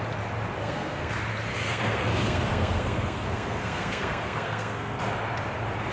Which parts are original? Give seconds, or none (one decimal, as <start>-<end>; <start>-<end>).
0.0-0.6; 1.1-1.5; 5.0-5.9